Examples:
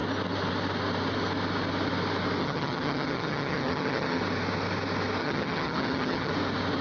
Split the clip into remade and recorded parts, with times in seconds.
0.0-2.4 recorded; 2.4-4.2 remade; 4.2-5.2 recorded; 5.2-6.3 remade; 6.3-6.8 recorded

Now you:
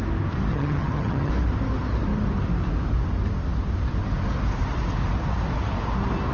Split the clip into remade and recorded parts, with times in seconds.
0.0-0.5 recorded; 0.5-1.3 remade; 1.3-6.3 recorded

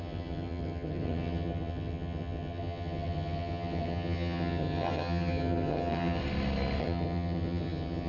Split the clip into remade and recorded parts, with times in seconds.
0.0-6.2 remade; 6.2-6.8 recorded; 6.8-8.1 remade